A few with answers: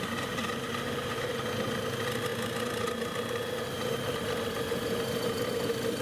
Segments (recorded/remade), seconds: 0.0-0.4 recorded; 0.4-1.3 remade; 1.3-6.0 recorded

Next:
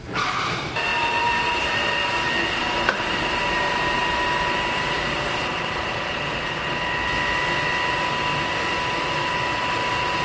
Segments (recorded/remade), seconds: 0.0-0.9 recorded; 0.9-2.0 remade; 2.0-2.6 recorded; 2.6-6.2 remade; 6.2-10.2 recorded